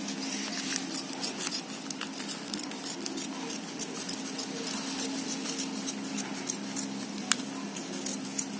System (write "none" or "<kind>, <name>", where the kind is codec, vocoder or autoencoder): none